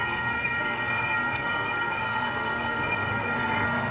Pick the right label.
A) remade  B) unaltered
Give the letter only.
A